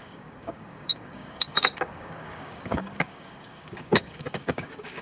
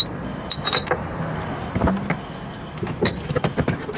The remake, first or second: first